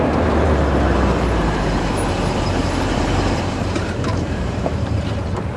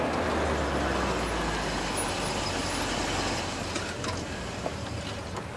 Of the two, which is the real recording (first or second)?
second